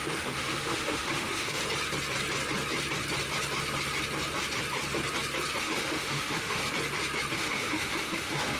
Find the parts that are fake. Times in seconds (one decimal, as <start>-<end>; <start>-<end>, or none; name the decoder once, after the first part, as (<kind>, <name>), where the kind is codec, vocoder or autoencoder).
0.0-1.6 (autoencoder, DAC-VAE); 5.6-6.6; 7.3-8.6